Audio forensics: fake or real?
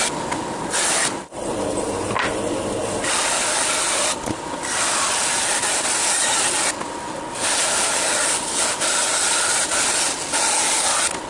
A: real